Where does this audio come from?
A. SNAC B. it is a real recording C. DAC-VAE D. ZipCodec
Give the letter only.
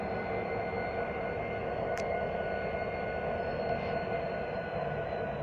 B